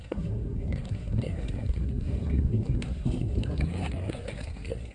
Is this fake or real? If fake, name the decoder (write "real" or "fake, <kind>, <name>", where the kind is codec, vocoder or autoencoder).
fake, codec, SNAC